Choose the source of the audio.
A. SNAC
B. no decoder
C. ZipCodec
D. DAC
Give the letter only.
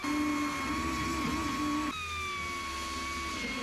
B